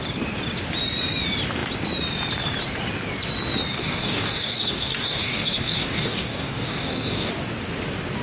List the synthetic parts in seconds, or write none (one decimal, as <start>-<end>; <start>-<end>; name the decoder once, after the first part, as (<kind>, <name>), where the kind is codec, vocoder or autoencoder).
3.8-7.3 (codec, DAC)

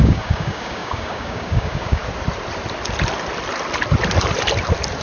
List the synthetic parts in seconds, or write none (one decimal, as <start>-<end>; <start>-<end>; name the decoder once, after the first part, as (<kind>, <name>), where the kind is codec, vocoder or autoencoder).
0.0-2.0 (codec, DAC)

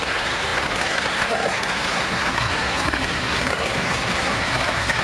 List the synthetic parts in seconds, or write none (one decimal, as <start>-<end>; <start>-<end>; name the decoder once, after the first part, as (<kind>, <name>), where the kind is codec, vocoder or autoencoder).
0.0-5.0 (codec, SNAC)

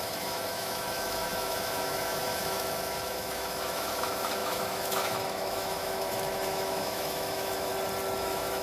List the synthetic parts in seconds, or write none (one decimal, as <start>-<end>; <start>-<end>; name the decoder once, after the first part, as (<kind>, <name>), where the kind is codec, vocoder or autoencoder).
0.0-7.7 (autoencoder, DAC-VAE); 8.2-8.6

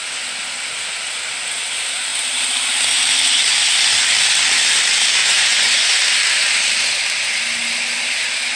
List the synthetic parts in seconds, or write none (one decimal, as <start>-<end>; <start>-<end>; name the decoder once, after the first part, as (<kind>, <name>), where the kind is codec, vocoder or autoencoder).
5.2-6.0 (vocoder, Vocos)